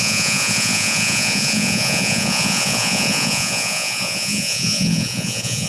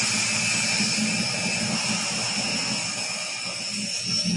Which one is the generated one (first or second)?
first